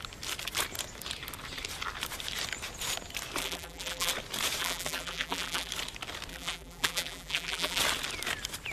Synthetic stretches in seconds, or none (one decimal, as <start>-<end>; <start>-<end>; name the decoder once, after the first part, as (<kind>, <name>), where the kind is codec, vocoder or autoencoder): 3.4-4.1 (vocoder, BigVGAN v2); 4.6-5.7; 6.3-7.8